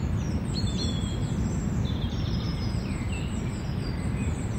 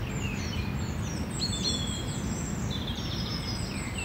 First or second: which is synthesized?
first